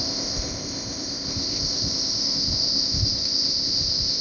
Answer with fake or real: fake